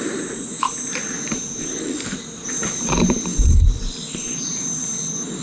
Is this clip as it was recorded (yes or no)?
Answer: no